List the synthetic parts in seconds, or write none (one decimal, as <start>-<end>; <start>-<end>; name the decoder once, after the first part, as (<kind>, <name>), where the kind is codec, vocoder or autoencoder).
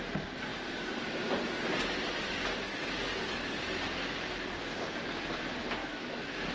5.8-6.5 (autoencoder, DAC-VAE)